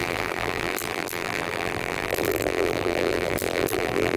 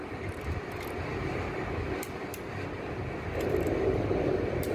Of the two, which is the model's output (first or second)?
first